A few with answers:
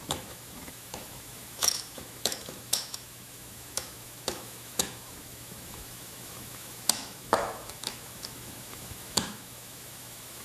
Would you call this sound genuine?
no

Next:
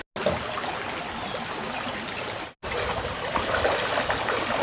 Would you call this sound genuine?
yes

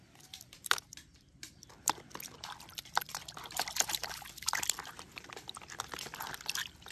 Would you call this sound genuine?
yes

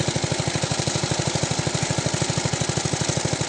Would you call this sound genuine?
yes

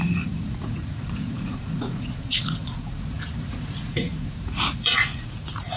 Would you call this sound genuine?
no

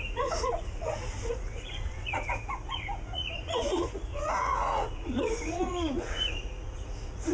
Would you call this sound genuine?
no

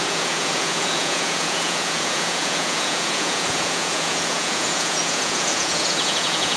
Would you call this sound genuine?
no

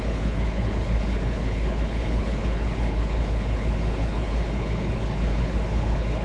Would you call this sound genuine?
no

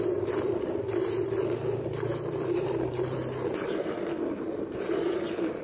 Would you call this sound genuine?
no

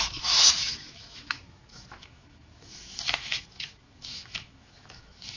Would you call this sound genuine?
no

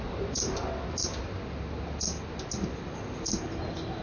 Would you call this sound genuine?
yes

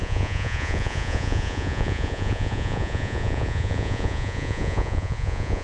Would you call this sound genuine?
no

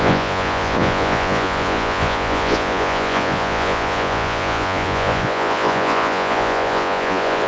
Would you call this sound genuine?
no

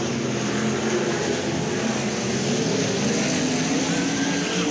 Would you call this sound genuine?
yes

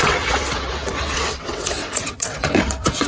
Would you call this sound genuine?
no